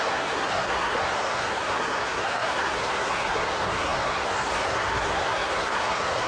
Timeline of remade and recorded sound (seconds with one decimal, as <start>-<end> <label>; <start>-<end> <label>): 0.0-6.3 remade